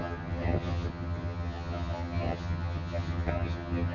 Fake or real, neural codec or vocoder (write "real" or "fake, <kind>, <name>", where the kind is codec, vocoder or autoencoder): fake, vocoder, HiFi-GAN